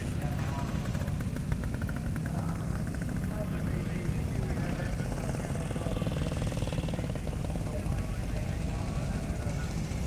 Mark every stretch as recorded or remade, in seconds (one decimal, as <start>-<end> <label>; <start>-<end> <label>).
0.0-2.3 recorded; 2.3-2.8 remade; 2.8-10.1 recorded